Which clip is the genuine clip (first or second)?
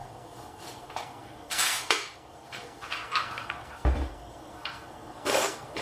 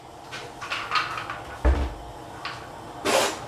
second